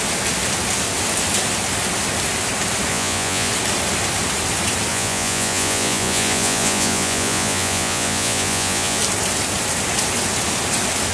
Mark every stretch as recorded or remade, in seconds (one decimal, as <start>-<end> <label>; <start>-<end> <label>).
0.0-2.9 recorded; 2.9-3.5 remade; 3.5-4.9 recorded; 4.9-9.0 remade; 9.0-11.1 recorded